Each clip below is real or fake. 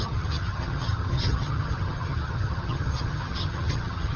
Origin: fake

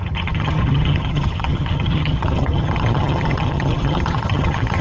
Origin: fake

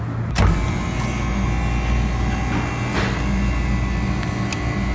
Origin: real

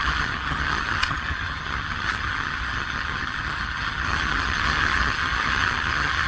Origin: fake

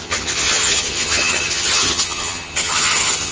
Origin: fake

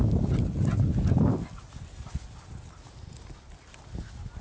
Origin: real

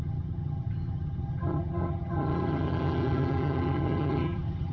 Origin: fake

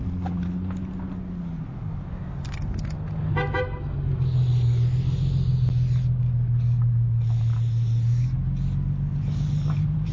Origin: real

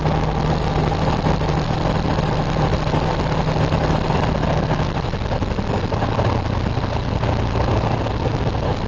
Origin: real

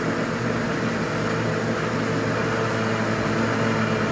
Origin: real